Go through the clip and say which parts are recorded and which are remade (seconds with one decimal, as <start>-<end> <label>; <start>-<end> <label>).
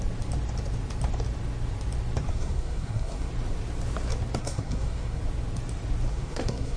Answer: 0.0-2.3 recorded; 2.3-3.3 remade; 3.3-4.4 recorded; 4.4-5.2 remade; 5.2-6.1 recorded; 6.1-6.8 remade